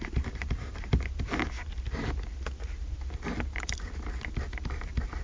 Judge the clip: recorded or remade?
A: remade